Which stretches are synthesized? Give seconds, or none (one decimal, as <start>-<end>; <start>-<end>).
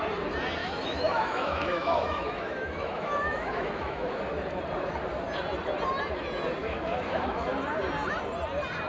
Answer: 0.6-4.2; 6.6-7.5